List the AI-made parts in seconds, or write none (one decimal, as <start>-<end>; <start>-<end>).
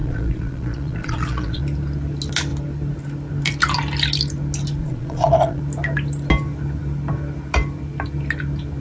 0.0-1.6; 4.8-5.6